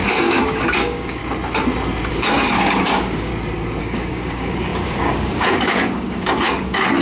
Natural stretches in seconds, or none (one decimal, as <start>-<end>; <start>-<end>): 1.2-2.1; 3.3-3.8